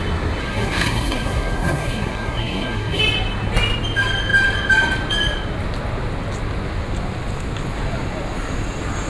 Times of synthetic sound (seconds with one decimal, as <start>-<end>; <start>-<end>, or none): 0.4-3.0